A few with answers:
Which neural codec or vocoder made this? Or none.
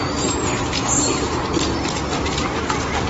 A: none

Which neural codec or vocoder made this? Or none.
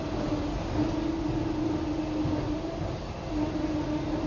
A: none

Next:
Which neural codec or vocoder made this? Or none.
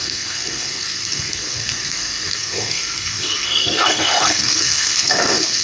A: codec, SNAC